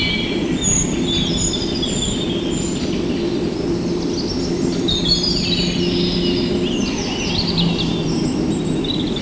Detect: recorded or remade recorded